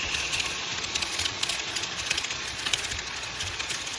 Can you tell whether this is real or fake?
fake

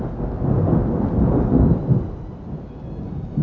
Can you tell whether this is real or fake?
real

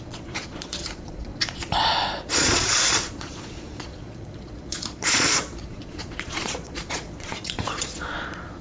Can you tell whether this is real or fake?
fake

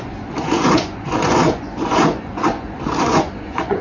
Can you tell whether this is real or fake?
fake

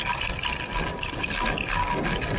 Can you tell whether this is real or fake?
real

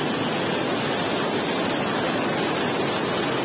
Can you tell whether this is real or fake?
real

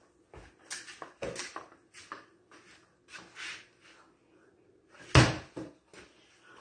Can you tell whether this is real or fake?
real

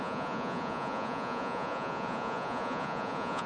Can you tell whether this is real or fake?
fake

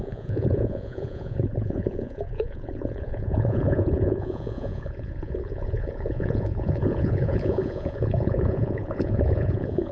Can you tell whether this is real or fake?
fake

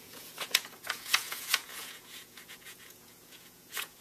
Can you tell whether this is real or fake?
fake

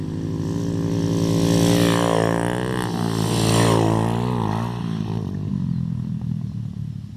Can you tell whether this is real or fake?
real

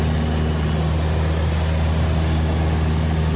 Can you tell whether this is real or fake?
real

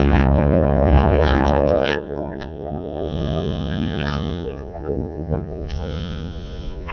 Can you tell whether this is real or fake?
fake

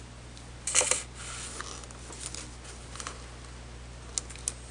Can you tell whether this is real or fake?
real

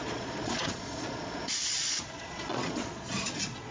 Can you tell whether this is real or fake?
fake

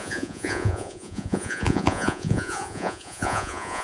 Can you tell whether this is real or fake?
fake